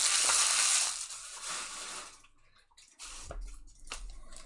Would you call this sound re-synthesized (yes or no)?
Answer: no